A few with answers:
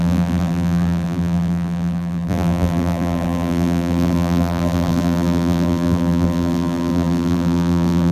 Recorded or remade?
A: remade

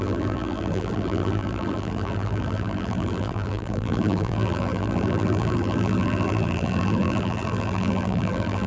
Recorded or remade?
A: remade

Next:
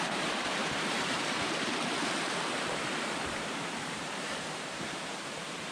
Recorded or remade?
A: remade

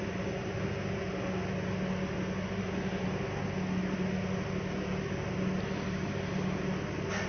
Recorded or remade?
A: recorded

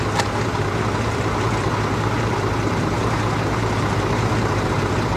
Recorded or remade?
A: remade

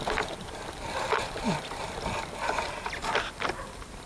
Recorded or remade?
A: remade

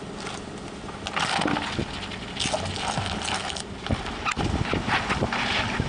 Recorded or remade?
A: recorded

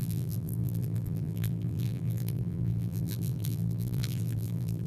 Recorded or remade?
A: remade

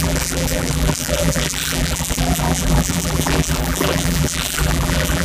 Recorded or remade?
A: remade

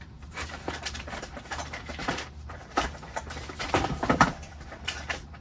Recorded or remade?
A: remade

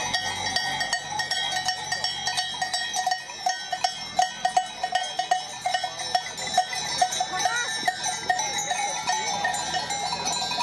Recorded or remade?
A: recorded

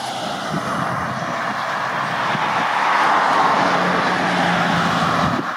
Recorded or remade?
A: recorded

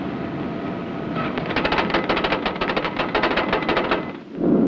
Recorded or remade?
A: recorded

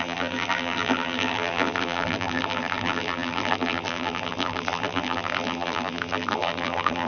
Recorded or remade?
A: remade